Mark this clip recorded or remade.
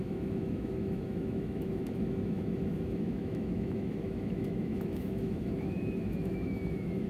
remade